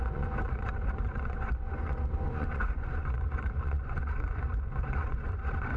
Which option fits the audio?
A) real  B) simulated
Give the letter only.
B